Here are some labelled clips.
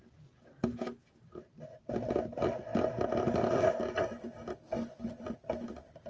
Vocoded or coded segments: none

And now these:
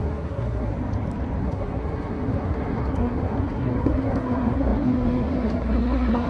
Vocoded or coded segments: 0.0-0.7 (codec, SNAC); 1.4-6.3

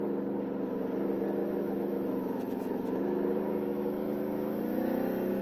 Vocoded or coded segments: 1.4-4.6 (autoencoder, DAC-VAE)

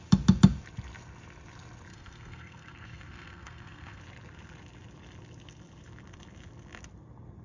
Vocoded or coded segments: 1.9-4.0 (codec, SNAC)

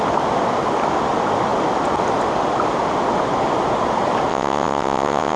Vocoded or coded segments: 4.3-5.4 (vocoder, WaveNeXt)

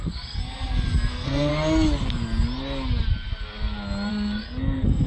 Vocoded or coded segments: 0.0-0.4 (codec, SNAC); 1.1-1.5; 4.1-5.1

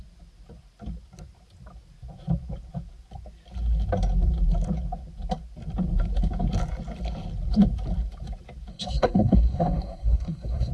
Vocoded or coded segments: 8.7-10.7 (codec, SNAC)

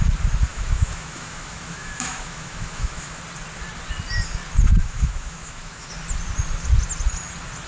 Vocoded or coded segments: 0.5-3.2 (autoencoder, DAC-VAE); 4.8-5.9